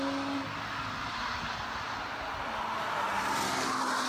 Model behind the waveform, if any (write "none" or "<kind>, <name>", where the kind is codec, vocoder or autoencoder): none